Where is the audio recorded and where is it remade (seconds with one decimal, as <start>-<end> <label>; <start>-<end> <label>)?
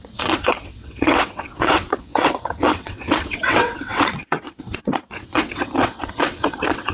0.0-6.9 remade